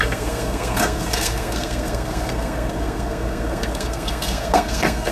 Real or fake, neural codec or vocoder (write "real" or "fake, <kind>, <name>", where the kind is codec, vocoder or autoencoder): fake, codec, SNAC